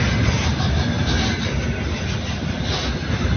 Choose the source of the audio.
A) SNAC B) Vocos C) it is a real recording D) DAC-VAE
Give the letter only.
C